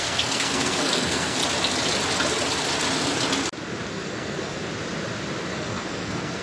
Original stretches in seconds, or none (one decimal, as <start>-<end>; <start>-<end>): 1.4-3.9; 4.6-5.4